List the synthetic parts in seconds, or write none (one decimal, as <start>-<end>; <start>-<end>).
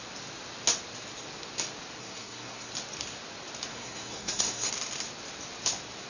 2.0-2.7; 3.7-4.7